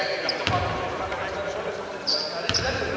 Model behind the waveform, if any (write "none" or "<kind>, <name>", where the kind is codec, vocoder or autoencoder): none